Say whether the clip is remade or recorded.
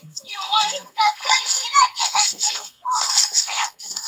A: remade